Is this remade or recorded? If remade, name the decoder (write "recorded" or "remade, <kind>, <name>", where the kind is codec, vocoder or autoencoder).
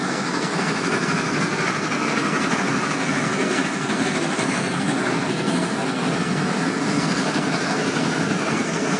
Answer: remade, codec, SNAC